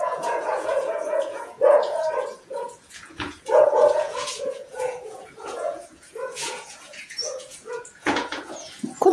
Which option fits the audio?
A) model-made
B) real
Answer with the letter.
A